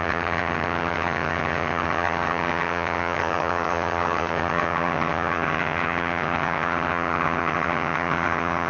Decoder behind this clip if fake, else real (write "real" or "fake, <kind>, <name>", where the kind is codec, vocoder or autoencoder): fake, vocoder, HiFi-GAN